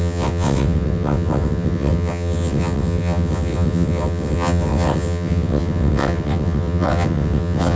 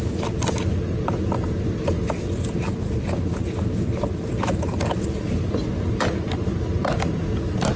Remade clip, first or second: first